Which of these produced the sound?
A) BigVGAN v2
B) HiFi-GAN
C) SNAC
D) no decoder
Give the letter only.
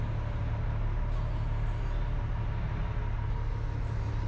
D